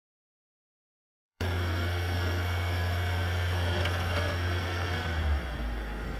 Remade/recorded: remade